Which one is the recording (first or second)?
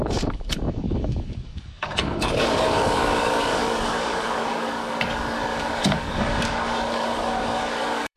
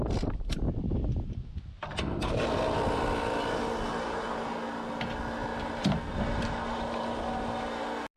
second